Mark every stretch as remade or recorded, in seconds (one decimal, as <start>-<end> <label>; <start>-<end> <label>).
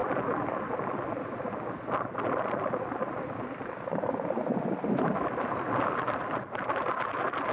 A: 0.0-7.5 recorded